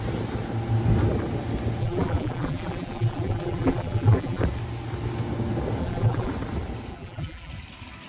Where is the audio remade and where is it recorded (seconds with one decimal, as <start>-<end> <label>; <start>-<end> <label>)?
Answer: 0.0-1.8 recorded; 1.8-4.4 remade; 4.4-5.8 recorded; 5.8-6.3 remade; 6.3-6.9 recorded; 6.9-7.5 remade; 7.5-8.1 recorded